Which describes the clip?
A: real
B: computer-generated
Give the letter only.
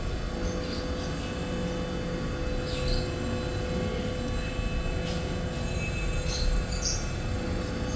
A